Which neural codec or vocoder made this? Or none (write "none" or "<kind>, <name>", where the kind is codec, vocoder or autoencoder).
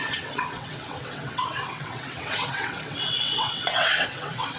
vocoder, WaveNeXt